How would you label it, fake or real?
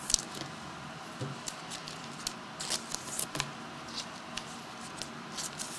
real